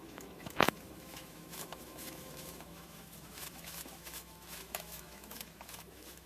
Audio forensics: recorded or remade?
remade